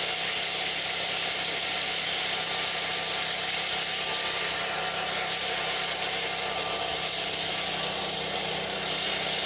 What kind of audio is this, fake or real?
real